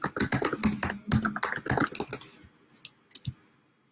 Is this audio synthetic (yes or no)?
no